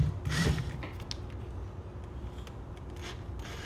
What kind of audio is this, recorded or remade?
recorded